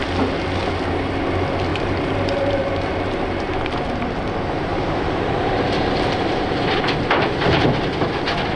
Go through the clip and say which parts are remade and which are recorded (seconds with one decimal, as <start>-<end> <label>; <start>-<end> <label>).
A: 0.0-1.7 recorded; 1.7-4.0 remade; 4.0-4.7 recorded; 4.7-7.9 remade; 7.9-8.6 recorded